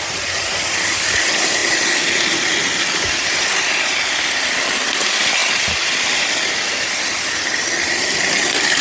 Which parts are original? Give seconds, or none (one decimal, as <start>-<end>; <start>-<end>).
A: 0.0-8.8